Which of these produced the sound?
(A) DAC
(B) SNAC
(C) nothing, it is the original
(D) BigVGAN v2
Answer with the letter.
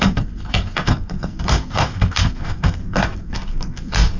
B